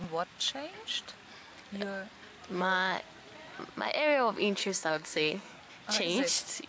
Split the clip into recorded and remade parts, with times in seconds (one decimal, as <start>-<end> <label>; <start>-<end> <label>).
0.0-4.6 recorded; 4.6-5.6 remade; 5.6-6.7 recorded